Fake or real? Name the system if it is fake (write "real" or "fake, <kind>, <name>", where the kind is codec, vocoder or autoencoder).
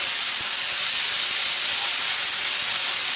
real